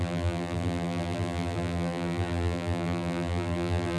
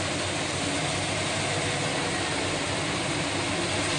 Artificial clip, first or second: first